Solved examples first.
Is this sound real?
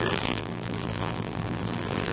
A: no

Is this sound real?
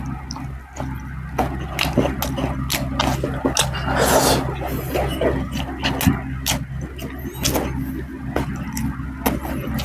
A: yes